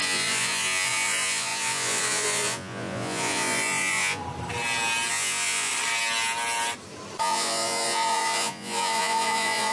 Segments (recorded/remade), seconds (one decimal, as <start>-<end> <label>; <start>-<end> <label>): 0.0-4.2 remade; 4.2-5.1 recorded; 5.1-5.7 remade; 5.7-7.2 recorded; 7.2-9.7 remade